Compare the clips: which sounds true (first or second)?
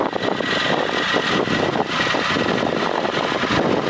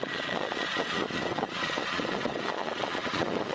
first